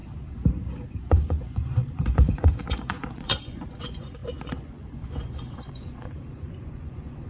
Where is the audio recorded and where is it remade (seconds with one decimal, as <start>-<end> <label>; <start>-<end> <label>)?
0.0-1.1 recorded; 1.1-7.3 remade